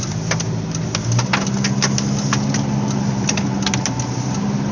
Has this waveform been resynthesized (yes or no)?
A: no